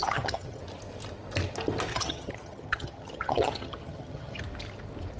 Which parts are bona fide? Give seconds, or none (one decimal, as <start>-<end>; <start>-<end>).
0.6-1.9; 4.4-5.2